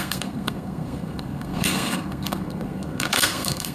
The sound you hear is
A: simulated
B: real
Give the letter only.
A